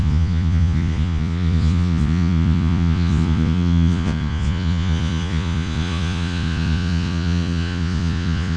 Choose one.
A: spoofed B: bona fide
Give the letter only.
A